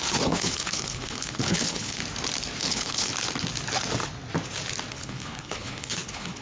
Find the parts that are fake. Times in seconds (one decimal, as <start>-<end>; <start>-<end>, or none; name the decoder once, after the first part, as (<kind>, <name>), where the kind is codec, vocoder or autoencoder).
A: 0.0-2.0 (codec, HILCodec); 2.6-3.1; 4.9-6.4